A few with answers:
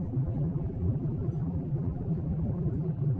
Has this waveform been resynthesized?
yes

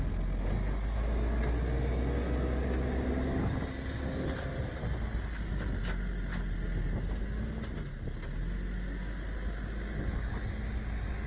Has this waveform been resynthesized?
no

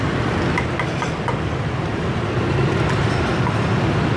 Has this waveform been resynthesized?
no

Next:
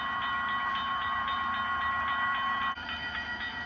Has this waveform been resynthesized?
yes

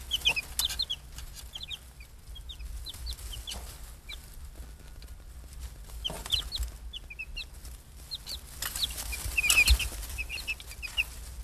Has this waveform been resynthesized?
no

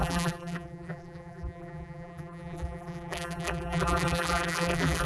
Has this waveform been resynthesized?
yes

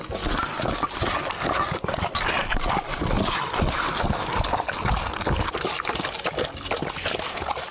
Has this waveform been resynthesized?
no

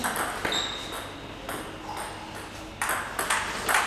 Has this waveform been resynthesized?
no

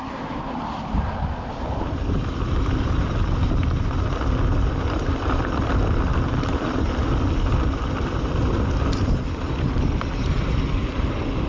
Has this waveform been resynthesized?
no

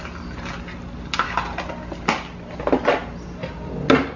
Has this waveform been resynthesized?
no